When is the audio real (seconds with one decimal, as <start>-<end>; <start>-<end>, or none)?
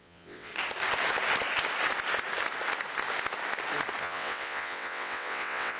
0.5-4.0